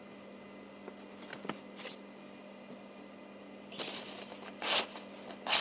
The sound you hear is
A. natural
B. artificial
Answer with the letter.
A